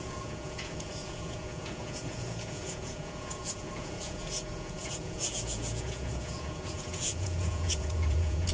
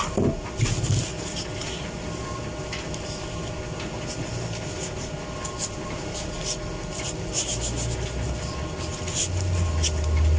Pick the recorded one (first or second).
second